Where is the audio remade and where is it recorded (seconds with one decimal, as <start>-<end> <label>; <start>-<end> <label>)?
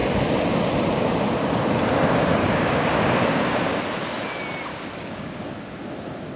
0.0-2.4 recorded; 2.4-3.8 remade; 3.8-4.7 recorded; 4.7-5.3 remade; 5.3-6.4 recorded